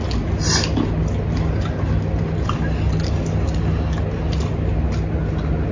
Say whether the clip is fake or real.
real